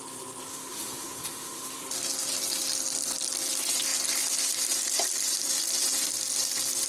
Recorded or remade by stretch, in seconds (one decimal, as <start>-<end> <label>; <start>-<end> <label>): 0.0-0.5 recorded; 0.5-1.8 remade; 1.8-6.9 recorded